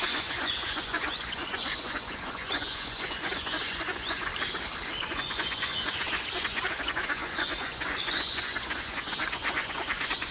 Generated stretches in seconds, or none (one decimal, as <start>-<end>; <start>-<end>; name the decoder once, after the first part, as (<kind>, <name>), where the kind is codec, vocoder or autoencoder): 0.0-4.3 (vocoder, Vocos); 5.0-10.3